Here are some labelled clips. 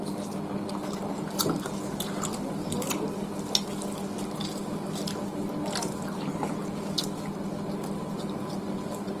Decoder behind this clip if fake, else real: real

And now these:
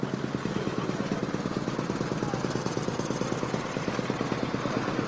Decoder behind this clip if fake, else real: real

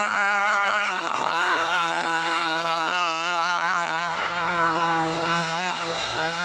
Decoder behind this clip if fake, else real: fake, codec, SNAC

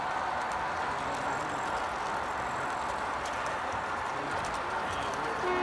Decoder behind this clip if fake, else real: real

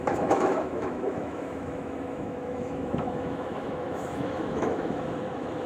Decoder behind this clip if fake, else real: fake, autoencoder, DAC-VAE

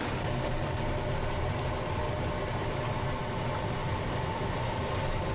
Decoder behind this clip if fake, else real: real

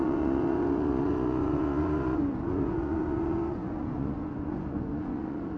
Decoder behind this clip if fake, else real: fake, vocoder, Vocos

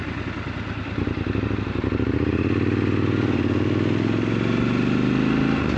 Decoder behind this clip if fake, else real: real